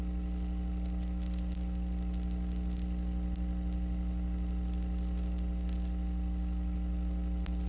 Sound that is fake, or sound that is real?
real